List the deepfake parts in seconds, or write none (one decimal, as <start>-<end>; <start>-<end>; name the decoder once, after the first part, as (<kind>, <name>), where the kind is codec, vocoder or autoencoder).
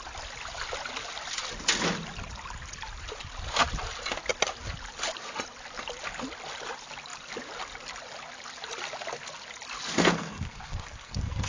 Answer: 10.0-11.5 (codec, SNAC)